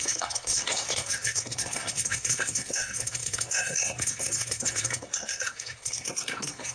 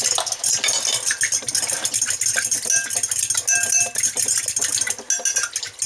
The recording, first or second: second